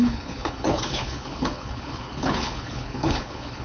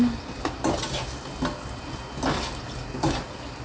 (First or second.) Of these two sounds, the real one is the second